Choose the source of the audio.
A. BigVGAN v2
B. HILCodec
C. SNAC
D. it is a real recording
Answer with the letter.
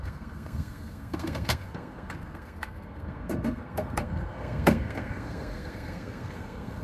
C